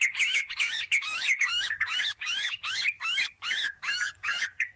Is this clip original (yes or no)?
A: no